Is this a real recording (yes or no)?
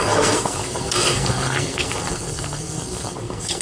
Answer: no